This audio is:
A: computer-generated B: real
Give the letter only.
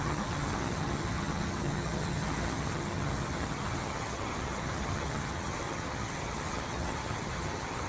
A